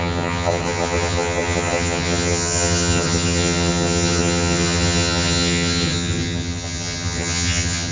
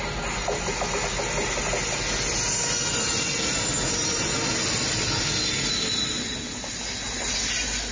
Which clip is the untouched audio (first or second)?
second